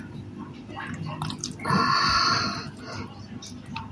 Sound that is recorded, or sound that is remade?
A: recorded